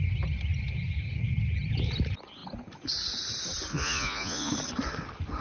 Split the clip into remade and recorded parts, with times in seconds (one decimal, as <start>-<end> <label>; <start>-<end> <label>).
0.0-3.7 recorded; 3.7-4.5 remade; 4.5-5.4 recorded